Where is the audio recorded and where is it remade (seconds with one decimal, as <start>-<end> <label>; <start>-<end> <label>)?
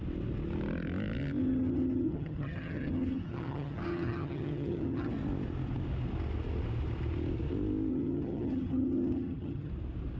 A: 0.0-1.4 recorded; 1.4-5.1 remade; 5.1-7.9 recorded; 7.9-9.7 remade; 9.7-10.2 recorded